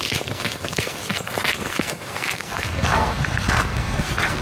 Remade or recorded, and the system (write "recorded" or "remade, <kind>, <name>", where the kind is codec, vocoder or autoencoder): remade, codec, SNAC